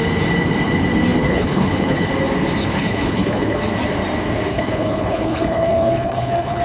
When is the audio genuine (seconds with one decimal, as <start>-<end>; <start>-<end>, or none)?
0.0-1.2; 2.1-2.6; 3.6-4.5